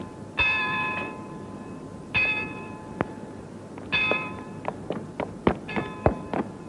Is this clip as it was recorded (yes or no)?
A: yes